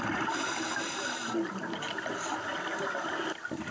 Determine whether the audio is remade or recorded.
recorded